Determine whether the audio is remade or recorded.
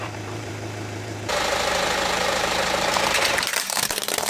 remade